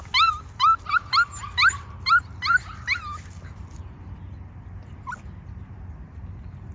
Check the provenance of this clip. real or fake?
real